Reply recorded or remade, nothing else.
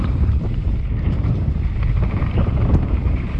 remade